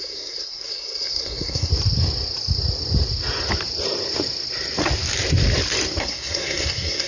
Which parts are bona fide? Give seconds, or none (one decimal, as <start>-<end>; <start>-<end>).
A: 1.7-6.0